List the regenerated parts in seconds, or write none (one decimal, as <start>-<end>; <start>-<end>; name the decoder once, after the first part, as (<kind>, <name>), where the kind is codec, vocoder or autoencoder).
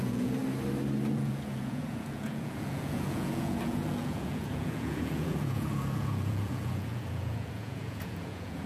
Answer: 0.0-0.4 (vocoder, Vocos); 1.1-8.7